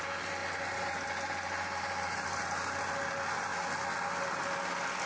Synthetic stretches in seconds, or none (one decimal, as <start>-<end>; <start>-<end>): none